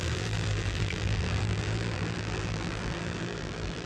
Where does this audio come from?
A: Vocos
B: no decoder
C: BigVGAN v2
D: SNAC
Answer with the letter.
C